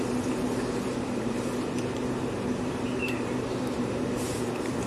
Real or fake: fake